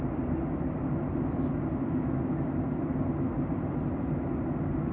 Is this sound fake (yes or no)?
no